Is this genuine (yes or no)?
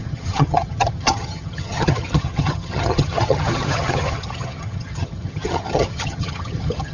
no